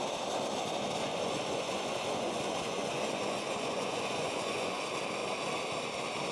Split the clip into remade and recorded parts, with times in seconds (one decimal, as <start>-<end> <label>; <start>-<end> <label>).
0.0-1.0 recorded; 1.0-4.8 remade; 4.8-6.3 recorded